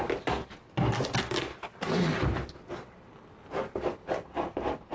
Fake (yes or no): no